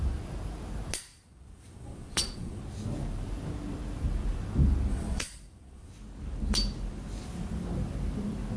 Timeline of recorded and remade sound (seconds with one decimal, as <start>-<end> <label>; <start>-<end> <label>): 0.0-1.1 recorded; 1.1-2.6 remade; 2.6-4.9 recorded; 4.9-5.9 remade; 5.9-8.6 recorded